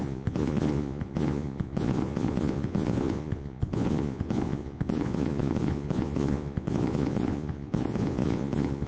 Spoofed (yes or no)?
yes